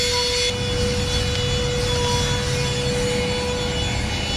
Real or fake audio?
real